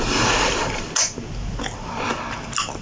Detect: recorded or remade recorded